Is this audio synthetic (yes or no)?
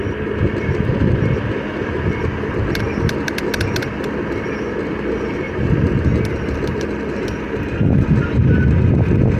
no